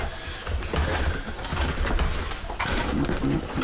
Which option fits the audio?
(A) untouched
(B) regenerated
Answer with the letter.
A